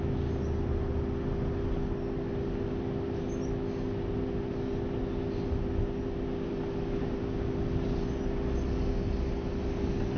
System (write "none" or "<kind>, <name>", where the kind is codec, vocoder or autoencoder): none